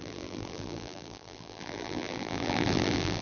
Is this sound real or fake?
fake